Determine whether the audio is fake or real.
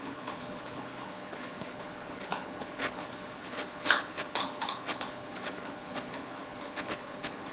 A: fake